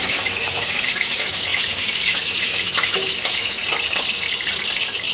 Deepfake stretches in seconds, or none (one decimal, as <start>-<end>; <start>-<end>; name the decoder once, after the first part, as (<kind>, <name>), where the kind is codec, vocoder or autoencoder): 0.0-3.6 (autoencoder, DAC-VAE)

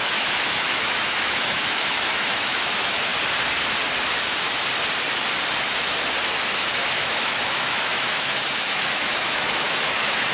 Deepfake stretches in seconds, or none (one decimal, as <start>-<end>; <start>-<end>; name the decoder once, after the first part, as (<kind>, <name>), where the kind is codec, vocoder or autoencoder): 0.0-3.1 (autoencoder, DAC-VAE); 6.9-10.3

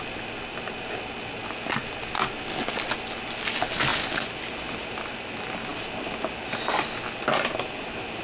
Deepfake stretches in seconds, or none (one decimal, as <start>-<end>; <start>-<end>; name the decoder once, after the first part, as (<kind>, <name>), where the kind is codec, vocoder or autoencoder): none

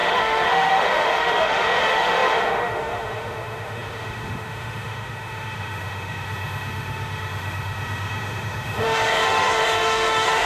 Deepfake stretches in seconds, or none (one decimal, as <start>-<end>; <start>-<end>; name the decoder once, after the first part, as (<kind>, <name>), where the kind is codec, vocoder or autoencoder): 0.0-10.5 (autoencoder, DAC-VAE)

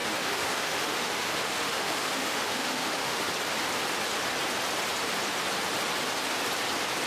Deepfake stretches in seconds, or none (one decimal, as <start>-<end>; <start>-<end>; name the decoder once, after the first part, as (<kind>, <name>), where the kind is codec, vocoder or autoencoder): 0.0-3.3 (autoencoder, DAC-VAE)

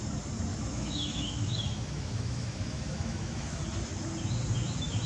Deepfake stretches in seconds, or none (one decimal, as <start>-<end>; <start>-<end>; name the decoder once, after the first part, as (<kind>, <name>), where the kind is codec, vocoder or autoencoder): 0.5-3.6 (autoencoder, DAC-VAE)